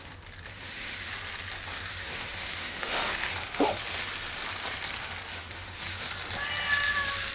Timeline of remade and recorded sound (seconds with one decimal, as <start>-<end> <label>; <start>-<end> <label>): 0.0-0.5 recorded; 0.5-1.1 remade; 1.1-1.9 recorded; 1.9-3.8 remade; 3.8-5.3 recorded; 5.3-6.1 remade; 6.1-7.3 recorded